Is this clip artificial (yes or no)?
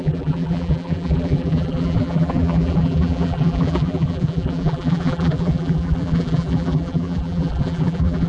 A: yes